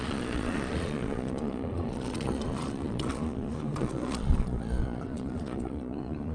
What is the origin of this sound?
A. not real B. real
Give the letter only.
A